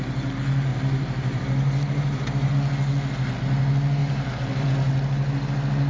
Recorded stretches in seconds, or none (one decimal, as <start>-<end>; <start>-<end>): 0.0-0.7; 2.5-4.0; 4.7-5.9